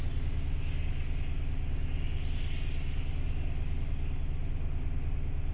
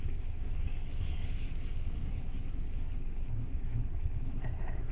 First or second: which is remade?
second